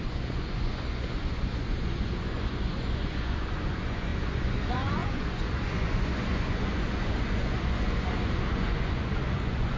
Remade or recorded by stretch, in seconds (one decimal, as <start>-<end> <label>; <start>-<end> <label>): 0.0-9.8 remade